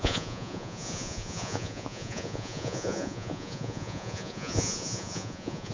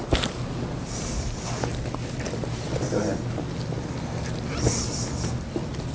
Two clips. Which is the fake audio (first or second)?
first